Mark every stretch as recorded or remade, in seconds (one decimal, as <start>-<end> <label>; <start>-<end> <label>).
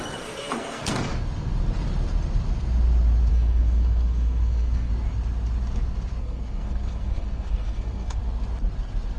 0.0-1.1 remade; 1.1-3.3 recorded; 3.3-4.9 remade; 4.9-6.2 recorded; 6.2-8.2 remade; 8.2-9.2 recorded